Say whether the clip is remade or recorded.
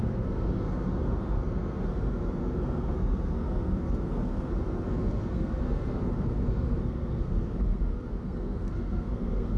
remade